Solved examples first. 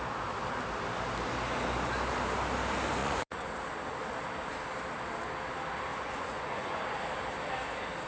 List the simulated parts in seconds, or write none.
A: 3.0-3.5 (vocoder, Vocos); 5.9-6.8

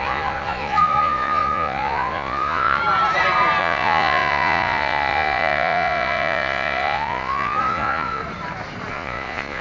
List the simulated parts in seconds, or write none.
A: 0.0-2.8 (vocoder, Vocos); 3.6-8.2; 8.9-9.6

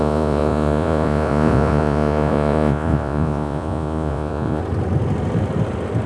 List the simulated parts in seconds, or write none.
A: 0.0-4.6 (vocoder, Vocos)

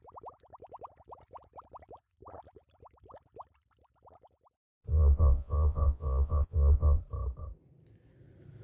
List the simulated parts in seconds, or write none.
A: 4.9-7.0 (vocoder, Vocos)

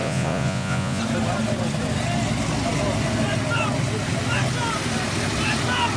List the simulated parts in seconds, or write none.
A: 0.0-1.0 (vocoder, Vocos)

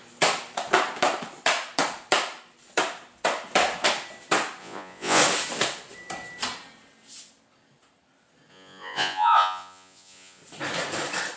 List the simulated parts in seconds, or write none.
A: 4.6-5.2 (vocoder, Vocos); 8.5-10.4

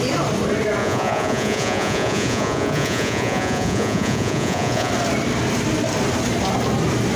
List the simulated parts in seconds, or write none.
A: 0.8-4.9 (vocoder, Vocos)

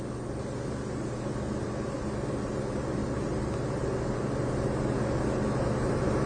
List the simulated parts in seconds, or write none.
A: none